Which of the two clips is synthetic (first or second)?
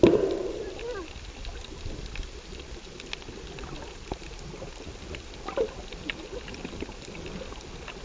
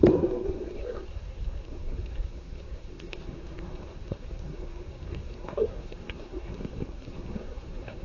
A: second